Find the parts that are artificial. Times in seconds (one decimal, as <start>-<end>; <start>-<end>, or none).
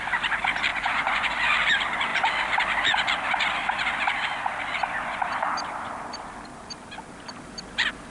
0.7-1.3